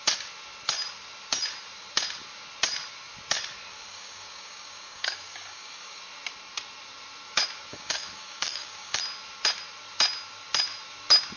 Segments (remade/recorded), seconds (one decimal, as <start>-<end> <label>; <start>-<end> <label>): 0.0-3.7 recorded; 3.7-6.0 remade; 6.0-7.7 recorded; 7.7-9.0 remade; 9.0-11.4 recorded